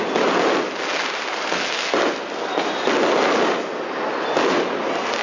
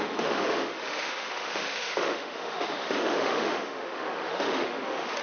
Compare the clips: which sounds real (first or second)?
first